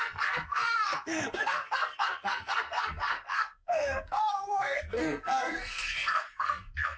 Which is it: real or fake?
fake